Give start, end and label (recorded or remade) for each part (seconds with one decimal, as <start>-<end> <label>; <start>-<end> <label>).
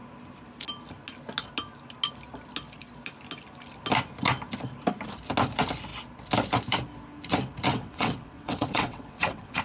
0.0-7.7 recorded; 7.7-9.6 remade